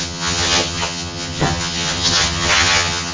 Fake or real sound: fake